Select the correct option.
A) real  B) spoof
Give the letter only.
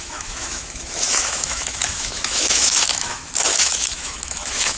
B